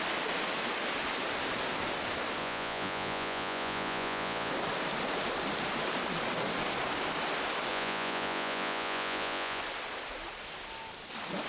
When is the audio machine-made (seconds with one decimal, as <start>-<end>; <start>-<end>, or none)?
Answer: 2.4-4.5; 7.7-9.6